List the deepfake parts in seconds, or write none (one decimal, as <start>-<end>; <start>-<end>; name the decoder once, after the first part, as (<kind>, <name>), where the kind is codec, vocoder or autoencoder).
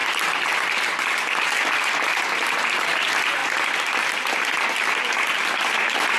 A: 0.0-1.9 (vocoder, BigVGAN v2); 3.4-5.7